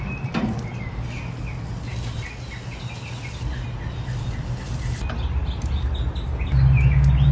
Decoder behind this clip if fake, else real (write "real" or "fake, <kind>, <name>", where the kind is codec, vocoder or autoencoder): real